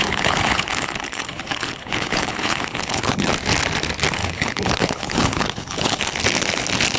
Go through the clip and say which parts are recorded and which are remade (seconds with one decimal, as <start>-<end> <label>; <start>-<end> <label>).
0.0-3.3 remade; 3.3-4.2 recorded; 4.2-6.0 remade; 6.0-7.0 recorded